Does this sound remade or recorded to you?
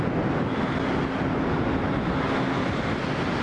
recorded